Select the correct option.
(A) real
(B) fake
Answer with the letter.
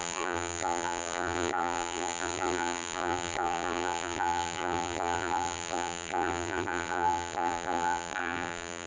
B